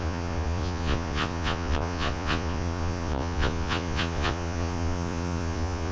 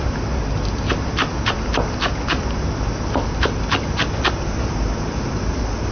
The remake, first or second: first